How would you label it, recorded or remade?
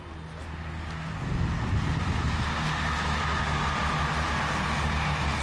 recorded